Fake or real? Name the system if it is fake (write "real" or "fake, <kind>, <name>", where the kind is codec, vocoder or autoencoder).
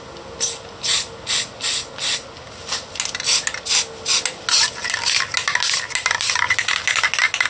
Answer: real